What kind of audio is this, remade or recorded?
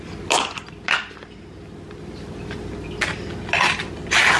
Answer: recorded